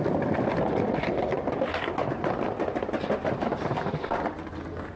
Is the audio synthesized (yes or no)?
no